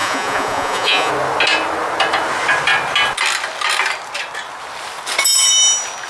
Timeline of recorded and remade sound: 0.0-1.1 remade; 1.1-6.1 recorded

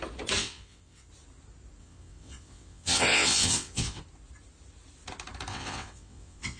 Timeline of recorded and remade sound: 0.0-0.4 recorded; 0.4-1.1 remade; 1.1-1.8 recorded; 1.8-4.0 remade; 4.0-5.5 recorded; 5.5-6.6 remade

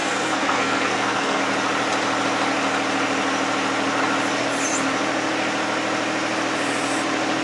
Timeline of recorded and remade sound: 0.0-1.4 remade; 1.4-7.4 recorded

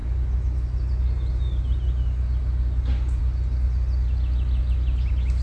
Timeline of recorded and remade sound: 0.0-5.4 recorded

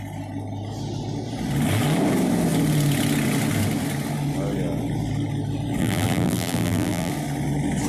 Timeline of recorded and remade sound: 0.0-5.8 recorded; 5.8-7.1 remade; 7.1-7.9 recorded

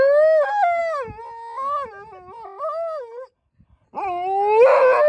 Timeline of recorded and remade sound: 0.0-5.1 recorded